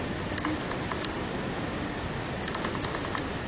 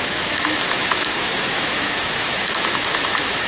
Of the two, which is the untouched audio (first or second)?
first